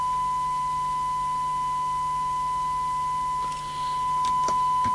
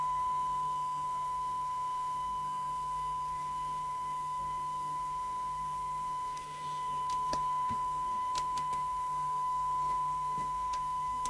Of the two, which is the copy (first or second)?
second